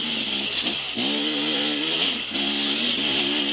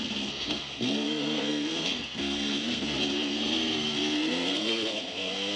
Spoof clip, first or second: second